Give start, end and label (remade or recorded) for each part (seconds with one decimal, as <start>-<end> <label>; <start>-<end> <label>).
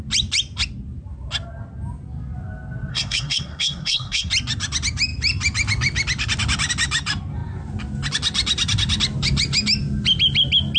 0.0-2.9 recorded; 2.9-4.3 remade; 4.3-10.8 recorded